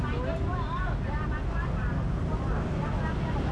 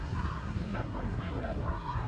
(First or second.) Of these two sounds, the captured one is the first